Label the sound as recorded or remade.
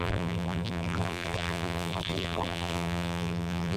remade